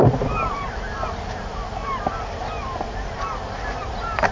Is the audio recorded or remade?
recorded